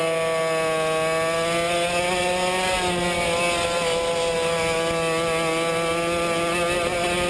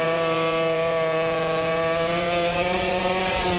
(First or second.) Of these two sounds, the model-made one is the second